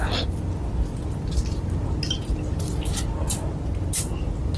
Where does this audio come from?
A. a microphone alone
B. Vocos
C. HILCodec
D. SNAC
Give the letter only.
A